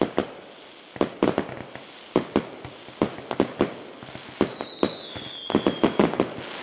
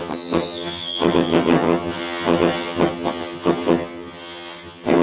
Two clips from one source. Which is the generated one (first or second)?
second